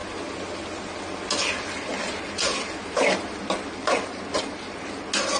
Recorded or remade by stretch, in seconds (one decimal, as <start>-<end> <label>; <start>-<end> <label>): 0.0-5.4 recorded